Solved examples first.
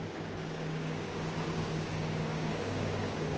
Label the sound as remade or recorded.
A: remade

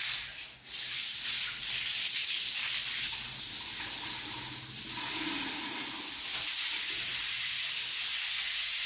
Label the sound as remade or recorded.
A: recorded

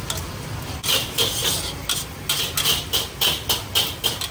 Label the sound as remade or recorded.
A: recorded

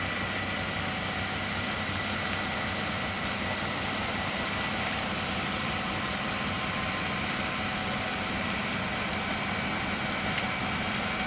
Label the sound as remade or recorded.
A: recorded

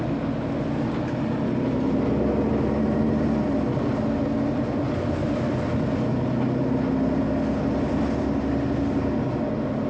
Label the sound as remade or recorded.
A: recorded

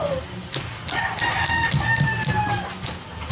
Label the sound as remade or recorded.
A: recorded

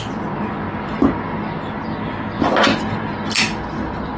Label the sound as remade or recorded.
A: recorded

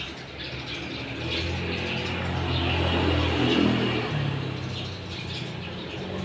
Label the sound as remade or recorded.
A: recorded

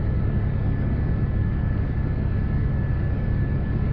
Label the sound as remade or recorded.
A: remade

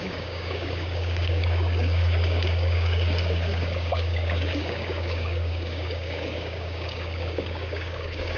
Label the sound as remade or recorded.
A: remade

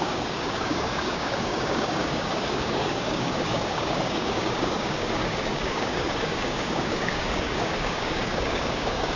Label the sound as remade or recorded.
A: remade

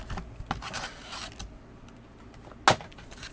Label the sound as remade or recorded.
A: recorded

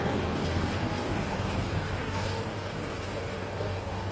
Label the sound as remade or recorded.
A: remade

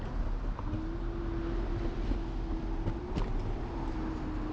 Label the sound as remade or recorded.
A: recorded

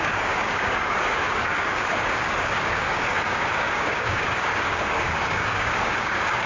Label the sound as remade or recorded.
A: remade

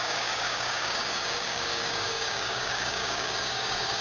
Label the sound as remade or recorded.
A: remade